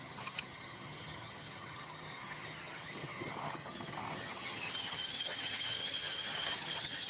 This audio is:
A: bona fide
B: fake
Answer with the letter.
B